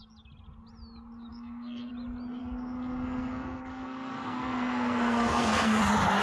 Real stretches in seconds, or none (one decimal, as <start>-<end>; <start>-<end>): 0.0-1.3; 1.9-2.4; 5.8-6.2